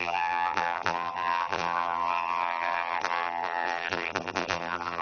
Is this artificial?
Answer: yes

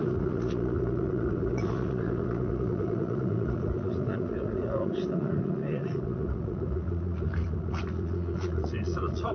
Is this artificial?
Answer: yes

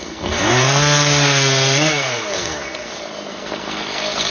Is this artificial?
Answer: yes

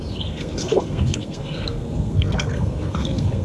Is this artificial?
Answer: yes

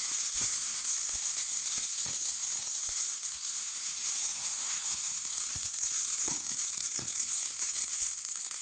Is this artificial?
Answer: yes